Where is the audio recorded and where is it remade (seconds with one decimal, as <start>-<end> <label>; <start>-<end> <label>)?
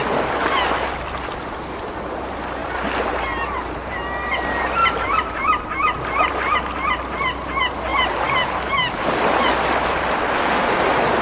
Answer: 0.0-2.6 recorded; 2.6-4.0 remade; 4.0-4.8 recorded; 4.8-6.3 remade; 6.3-7.9 recorded; 7.9-9.5 remade; 9.5-11.2 recorded